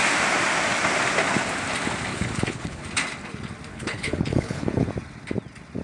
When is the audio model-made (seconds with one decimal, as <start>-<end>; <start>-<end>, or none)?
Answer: 2.1-2.8; 3.7-4.9